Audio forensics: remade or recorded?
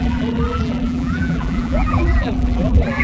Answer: remade